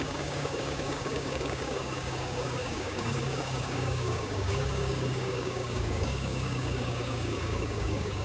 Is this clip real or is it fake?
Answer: fake